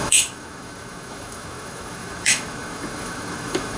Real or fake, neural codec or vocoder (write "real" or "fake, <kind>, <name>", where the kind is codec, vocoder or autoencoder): fake, autoencoder, DAC-VAE